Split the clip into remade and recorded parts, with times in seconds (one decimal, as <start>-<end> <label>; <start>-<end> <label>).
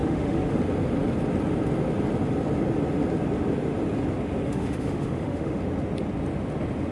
0.0-0.6 remade; 0.6-4.4 recorded; 4.4-5.6 remade; 5.6-6.9 recorded